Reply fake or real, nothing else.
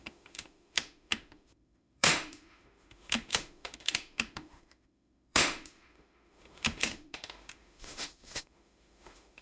fake